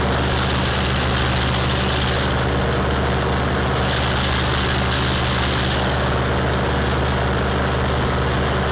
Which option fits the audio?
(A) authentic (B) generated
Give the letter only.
A